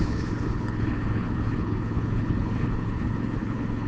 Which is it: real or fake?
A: fake